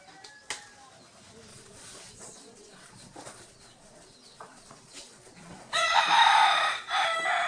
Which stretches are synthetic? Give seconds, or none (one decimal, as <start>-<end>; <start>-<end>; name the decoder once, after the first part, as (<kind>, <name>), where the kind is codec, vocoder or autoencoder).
1.5-6.0 (vocoder, Vocos)

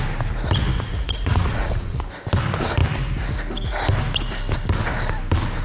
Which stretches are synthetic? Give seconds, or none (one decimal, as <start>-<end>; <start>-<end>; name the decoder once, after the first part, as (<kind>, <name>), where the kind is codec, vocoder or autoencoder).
0.7-2.0 (vocoder, Vocos)

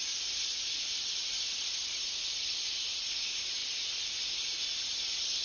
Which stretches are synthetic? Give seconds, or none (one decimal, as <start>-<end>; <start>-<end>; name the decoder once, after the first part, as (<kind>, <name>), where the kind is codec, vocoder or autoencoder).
none

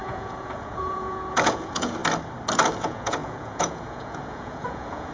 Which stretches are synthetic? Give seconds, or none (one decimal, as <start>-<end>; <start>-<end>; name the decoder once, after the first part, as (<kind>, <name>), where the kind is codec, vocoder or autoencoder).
0.0-2.0 (vocoder, Vocos); 2.8-5.1

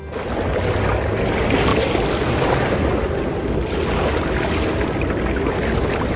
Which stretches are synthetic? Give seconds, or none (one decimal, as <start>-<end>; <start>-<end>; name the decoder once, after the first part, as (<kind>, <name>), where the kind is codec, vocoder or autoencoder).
none